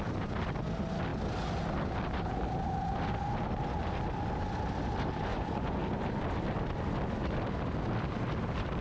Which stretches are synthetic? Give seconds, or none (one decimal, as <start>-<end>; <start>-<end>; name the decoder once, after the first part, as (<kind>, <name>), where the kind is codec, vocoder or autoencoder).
5.3-5.8 (vocoder, Vocos)

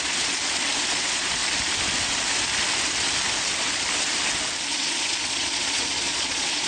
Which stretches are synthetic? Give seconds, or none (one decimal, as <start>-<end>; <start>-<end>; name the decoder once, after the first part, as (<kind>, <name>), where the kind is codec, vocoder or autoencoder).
0.0-0.4 (vocoder, Vocos); 0.9-1.4; 4.7-6.7

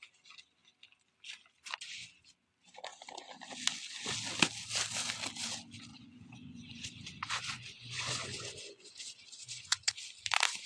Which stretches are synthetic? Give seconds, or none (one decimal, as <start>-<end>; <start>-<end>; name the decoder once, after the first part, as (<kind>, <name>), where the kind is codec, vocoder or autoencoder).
5.9-9.9 (vocoder, Vocos)

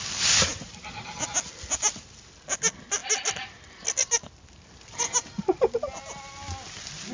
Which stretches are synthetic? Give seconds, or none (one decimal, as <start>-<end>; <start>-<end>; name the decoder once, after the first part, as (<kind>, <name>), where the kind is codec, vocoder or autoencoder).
none

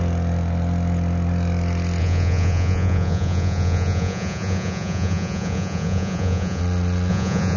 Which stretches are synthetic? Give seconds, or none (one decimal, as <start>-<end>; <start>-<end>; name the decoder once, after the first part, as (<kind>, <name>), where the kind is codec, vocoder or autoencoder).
2.0-6.6 (vocoder, Vocos); 7.1-7.6

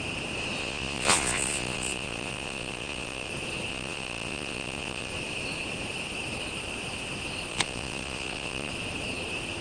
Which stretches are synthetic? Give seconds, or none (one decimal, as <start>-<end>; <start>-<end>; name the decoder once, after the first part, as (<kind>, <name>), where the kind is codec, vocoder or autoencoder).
0.6-3.3 (vocoder, Vocos); 3.7-5.1; 7.5-8.7